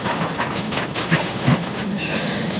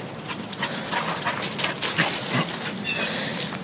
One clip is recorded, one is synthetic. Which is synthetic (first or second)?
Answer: first